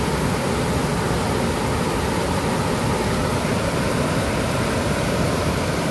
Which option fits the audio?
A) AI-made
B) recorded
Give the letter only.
B